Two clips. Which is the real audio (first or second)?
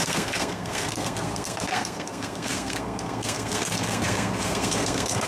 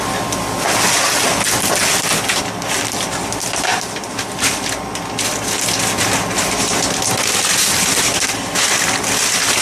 second